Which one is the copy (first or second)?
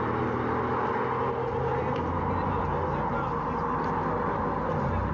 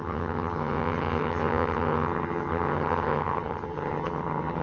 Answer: second